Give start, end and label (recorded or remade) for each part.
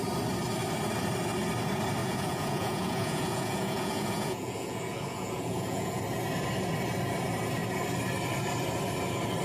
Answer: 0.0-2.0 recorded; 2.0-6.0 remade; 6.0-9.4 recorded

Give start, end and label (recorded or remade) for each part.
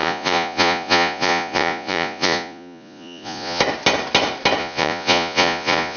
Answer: 0.0-3.6 remade; 3.6-4.6 recorded; 4.6-6.0 remade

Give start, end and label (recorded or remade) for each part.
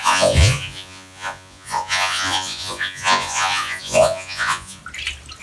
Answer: 0.0-4.8 remade; 4.8-5.4 recorded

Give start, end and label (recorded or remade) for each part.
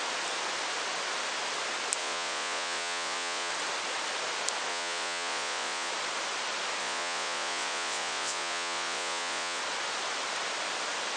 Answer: 0.0-2.0 recorded; 2.0-3.5 remade; 3.5-4.7 recorded; 4.7-5.9 remade; 5.9-6.8 recorded; 6.8-9.6 remade; 9.6-11.2 recorded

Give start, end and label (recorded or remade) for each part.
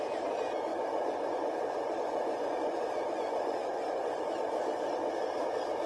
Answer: 0.0-0.7 recorded; 0.7-4.2 remade; 4.2-5.9 recorded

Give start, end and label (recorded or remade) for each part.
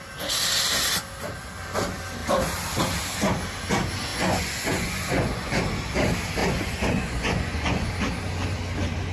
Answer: 0.0-4.1 recorded; 4.1-5.5 remade; 5.5-6.4 recorded; 6.4-7.9 remade; 7.9-9.1 recorded